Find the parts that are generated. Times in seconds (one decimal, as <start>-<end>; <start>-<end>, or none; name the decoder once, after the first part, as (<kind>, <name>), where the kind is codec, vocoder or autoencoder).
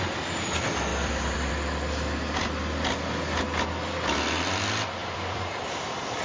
0.9-1.5 (vocoder, BigVGAN v2); 5.0-6.2